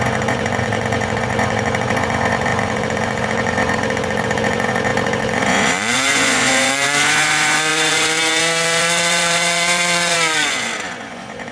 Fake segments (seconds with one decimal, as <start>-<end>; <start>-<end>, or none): 0.0-11.5